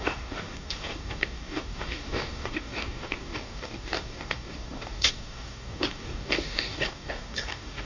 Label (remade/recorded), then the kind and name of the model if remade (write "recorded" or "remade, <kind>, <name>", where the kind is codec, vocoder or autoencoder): remade, codec, DAC